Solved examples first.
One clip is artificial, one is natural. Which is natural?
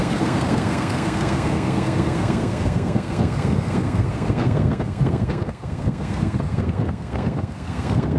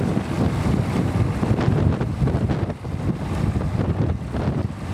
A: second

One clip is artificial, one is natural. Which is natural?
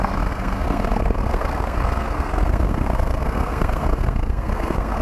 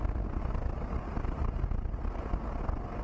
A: second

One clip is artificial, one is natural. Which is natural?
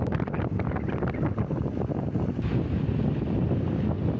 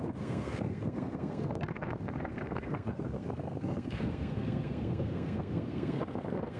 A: first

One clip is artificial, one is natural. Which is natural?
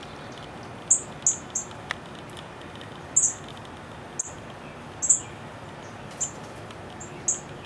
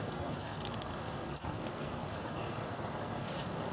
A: first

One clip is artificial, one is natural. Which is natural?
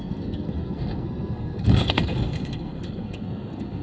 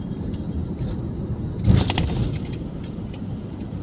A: second